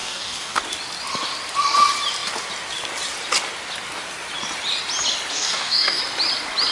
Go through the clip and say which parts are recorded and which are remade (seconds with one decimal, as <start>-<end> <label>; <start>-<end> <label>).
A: 0.0-0.6 remade; 0.6-5.3 recorded; 5.3-6.0 remade; 6.0-6.7 recorded